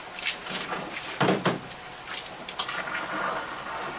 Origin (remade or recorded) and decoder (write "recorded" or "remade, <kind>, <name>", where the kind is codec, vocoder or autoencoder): recorded